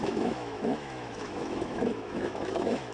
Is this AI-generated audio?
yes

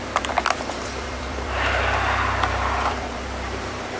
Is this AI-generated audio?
yes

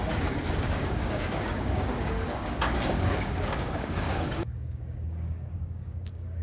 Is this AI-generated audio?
yes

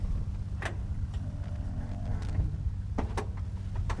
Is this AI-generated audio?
no